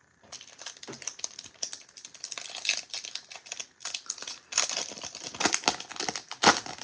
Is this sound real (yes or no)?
yes